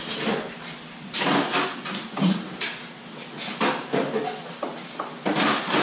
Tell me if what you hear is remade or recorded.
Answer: recorded